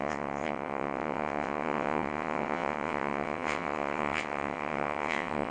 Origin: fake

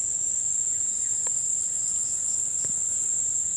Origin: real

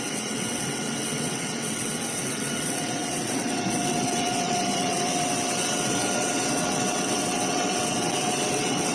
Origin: fake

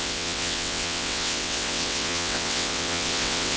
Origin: fake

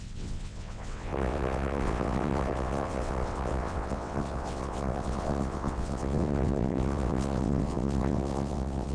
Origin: fake